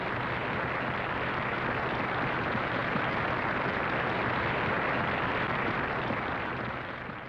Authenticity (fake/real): real